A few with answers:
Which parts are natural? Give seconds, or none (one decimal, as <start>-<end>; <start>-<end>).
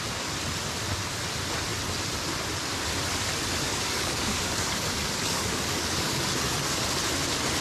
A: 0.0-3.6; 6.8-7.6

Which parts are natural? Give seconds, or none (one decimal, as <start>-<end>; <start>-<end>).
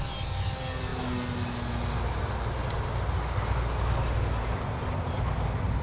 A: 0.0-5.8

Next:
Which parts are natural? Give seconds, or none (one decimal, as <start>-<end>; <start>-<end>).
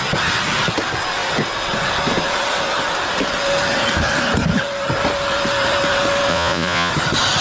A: 0.0-6.3; 6.9-7.4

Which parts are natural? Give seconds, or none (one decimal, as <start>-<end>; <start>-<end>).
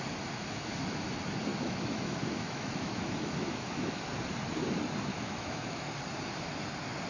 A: 0.0-1.5; 4.0-5.1; 5.9-7.1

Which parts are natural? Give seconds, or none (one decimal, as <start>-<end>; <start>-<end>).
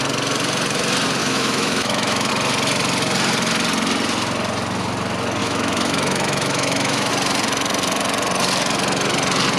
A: 0.0-1.2; 2.3-5.4; 7.1-9.6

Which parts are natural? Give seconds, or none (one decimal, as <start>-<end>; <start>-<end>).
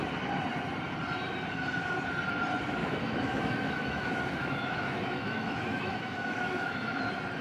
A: 0.0-2.8; 7.0-7.4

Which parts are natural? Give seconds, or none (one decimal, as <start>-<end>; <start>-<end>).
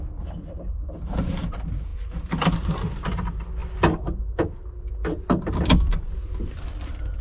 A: 0.0-7.2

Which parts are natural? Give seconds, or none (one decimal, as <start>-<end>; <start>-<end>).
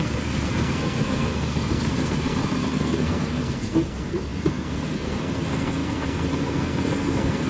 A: none